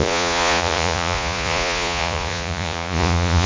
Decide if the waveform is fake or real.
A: fake